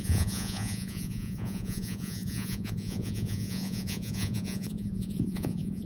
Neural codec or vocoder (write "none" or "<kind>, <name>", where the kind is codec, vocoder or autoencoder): vocoder, Vocos